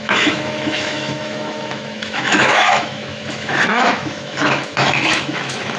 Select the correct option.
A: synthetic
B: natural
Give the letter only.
A